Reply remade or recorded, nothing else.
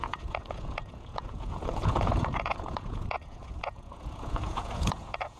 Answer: remade